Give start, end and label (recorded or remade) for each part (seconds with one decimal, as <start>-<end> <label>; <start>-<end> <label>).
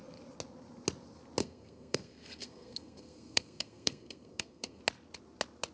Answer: 0.0-1.4 recorded; 1.4-4.8 remade; 4.8-5.7 recorded